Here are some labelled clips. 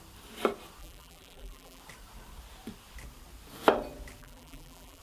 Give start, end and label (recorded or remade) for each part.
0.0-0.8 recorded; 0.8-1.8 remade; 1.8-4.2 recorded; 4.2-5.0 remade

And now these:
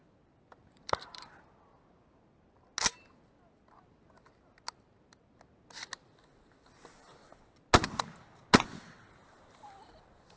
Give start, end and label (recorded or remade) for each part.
0.0-0.6 recorded; 0.6-1.3 remade; 1.3-10.4 recorded

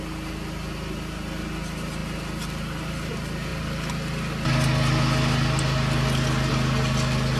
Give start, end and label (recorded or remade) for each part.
0.0-7.4 recorded

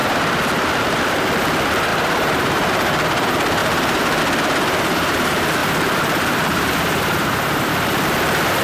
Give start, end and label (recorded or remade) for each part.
0.0-1.9 recorded; 1.9-2.9 remade; 2.9-3.6 recorded; 3.6-4.2 remade; 4.2-5.6 recorded; 5.6-7.7 remade; 7.7-8.6 recorded

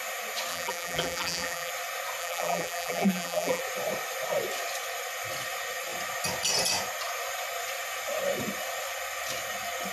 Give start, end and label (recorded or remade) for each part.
0.0-0.5 recorded; 0.5-1.7 remade; 1.7-2.2 recorded; 2.2-3.6 remade; 3.6-9.9 recorded